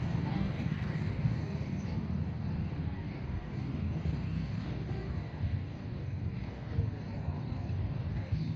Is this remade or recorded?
remade